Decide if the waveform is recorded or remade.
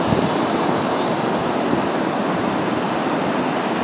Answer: recorded